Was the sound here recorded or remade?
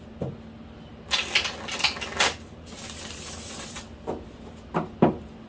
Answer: recorded